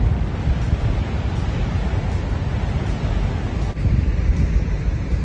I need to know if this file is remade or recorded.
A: recorded